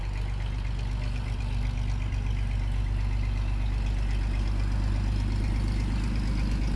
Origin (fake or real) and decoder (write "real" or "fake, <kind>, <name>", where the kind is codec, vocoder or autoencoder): real